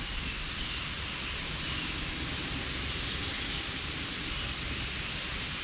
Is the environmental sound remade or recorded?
recorded